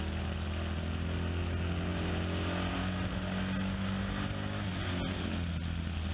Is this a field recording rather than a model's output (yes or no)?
yes